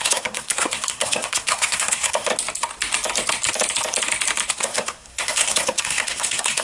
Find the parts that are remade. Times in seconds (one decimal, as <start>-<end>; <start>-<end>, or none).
0.0-2.3; 4.5-6.6